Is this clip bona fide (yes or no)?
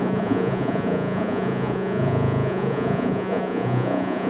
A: no